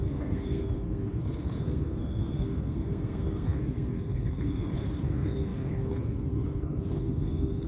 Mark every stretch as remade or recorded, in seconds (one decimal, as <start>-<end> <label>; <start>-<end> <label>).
0.0-7.7 remade

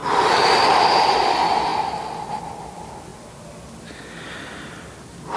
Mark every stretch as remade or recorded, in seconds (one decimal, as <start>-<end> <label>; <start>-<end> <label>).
0.0-5.4 recorded